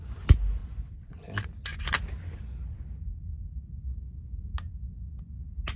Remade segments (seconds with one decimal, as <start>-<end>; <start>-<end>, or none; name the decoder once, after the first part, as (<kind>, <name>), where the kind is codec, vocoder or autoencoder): 0.6-1.2 (vocoder, Vocos)